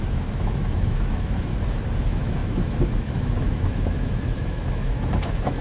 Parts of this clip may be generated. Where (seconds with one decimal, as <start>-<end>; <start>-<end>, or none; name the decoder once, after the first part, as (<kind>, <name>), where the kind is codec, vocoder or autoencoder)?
0.0-1.5 (autoencoder, DAC-VAE); 2.0-5.6